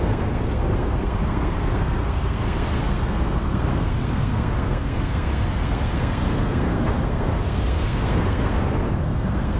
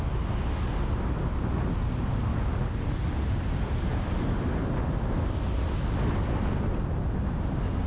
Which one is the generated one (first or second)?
first